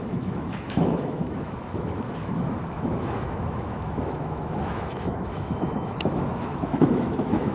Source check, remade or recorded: remade